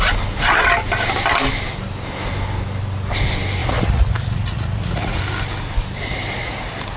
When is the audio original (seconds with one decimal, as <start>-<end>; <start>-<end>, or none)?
0.0-3.6; 5.2-7.0